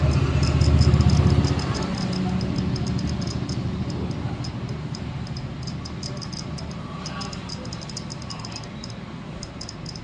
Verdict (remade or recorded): recorded